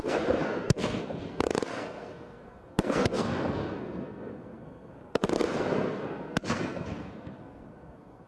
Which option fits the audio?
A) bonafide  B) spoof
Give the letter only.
B